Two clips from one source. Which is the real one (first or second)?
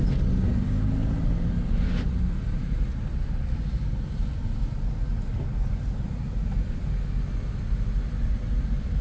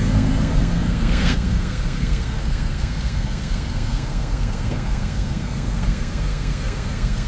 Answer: first